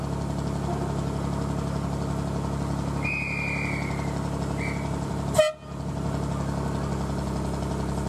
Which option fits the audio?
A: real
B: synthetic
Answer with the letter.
A